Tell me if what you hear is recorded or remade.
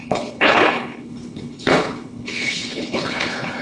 remade